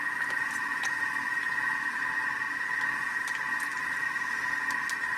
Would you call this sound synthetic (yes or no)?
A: no